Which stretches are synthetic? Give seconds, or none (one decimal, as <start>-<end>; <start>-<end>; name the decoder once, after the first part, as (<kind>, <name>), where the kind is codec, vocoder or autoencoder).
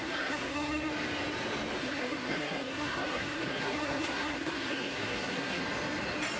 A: 0.0-0.9 (codec, SNAC); 1.8-5.6